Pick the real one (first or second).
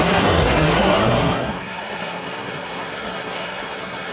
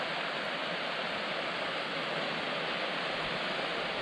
second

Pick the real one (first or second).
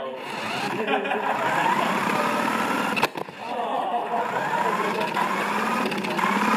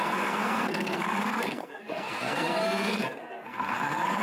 first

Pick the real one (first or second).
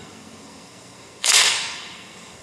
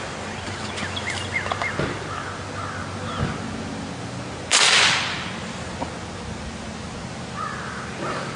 second